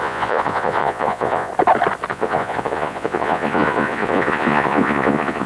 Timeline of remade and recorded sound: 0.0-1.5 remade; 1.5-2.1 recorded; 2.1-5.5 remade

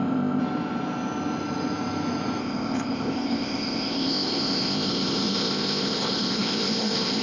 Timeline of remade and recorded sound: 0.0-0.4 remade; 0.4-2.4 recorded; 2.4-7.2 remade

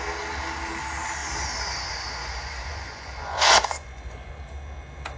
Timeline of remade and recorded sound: 0.0-1.2 recorded; 1.2-4.3 remade; 4.3-5.2 recorded